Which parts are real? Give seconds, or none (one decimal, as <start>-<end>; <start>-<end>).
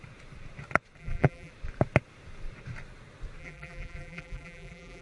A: 0.0-1.0; 1.5-3.4